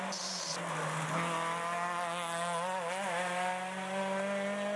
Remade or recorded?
recorded